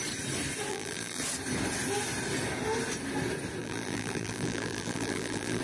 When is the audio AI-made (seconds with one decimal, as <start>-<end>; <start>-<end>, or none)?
0.7-1.2; 3.6-5.6